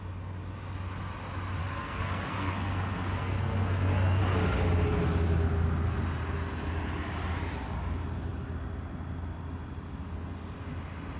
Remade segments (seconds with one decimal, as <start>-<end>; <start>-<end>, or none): 1.6-4.2